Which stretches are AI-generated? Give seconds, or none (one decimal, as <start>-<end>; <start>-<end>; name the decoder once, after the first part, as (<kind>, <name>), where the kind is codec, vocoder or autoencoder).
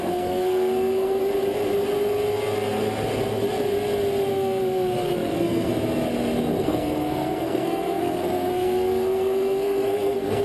0.0-1.2 (codec, SNAC); 4.3-5.7; 6.6-10.4